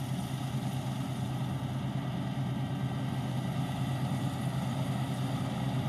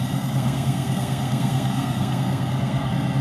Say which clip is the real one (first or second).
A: first